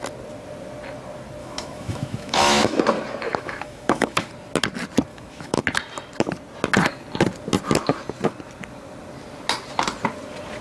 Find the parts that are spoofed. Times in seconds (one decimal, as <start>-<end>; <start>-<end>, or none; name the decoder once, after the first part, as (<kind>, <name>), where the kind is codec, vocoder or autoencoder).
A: 1.4-2.8 (autoencoder, DAC-VAE); 3.3-4.3; 5.1-5.6